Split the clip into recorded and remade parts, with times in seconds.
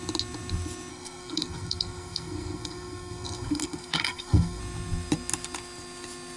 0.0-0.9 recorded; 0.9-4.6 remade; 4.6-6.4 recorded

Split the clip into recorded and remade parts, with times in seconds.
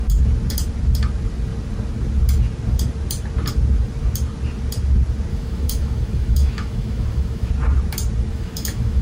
0.0-5.3 recorded; 5.3-7.5 remade; 7.5-8.3 recorded; 8.3-9.0 remade